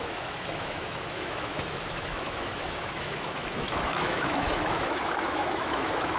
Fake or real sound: fake